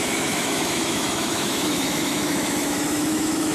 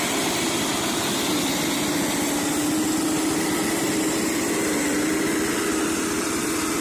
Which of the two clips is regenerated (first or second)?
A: first